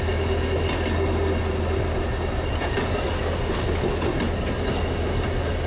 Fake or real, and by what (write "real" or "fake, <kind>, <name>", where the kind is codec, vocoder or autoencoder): real